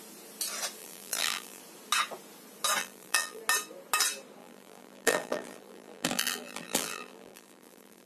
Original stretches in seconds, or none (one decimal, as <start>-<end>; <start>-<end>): 0.0-0.8; 1.6-2.8; 3.4-4.4